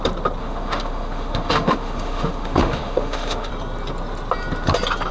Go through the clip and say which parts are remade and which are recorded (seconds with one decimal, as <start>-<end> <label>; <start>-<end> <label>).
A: 0.0-0.4 recorded; 0.4-3.5 remade; 3.5-5.1 recorded